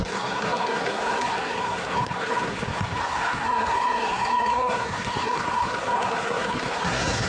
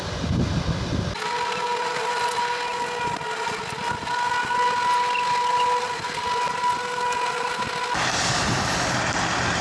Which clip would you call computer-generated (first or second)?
first